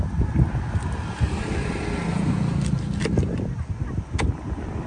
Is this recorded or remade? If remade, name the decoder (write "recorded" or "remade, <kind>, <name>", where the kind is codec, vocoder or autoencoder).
recorded